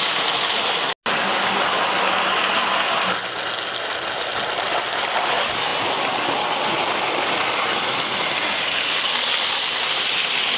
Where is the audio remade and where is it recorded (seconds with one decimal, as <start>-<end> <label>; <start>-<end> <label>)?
0.0-10.6 recorded

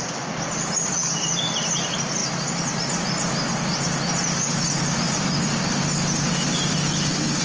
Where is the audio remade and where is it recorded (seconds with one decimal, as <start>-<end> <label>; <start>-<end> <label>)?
0.0-7.4 recorded

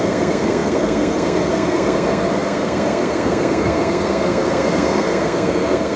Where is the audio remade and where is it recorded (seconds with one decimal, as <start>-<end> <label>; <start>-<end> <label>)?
0.0-6.0 remade

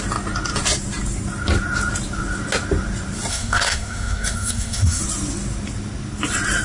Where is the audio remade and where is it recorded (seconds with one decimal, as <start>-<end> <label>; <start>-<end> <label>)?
0.0-3.3 recorded; 3.3-5.0 remade; 5.0-6.6 recorded

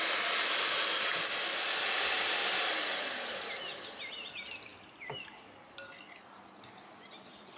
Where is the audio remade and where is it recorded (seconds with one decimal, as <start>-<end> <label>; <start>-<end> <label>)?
0.0-7.6 recorded

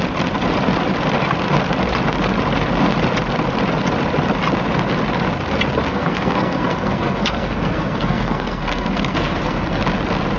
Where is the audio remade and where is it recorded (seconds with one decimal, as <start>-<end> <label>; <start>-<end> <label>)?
0.0-5.9 recorded; 5.9-9.8 remade; 9.8-10.4 recorded

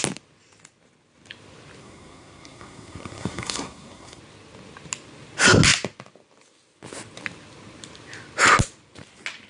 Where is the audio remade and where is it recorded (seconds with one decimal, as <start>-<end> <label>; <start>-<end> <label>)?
0.0-1.8 recorded; 1.8-4.2 remade; 4.2-9.5 recorded